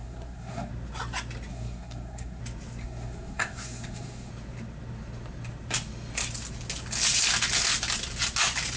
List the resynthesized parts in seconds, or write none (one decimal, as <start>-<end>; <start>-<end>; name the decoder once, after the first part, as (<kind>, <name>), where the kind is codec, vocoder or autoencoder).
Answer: 0.0-0.7 (codec, SNAC); 1.5-2.4; 2.8-4.3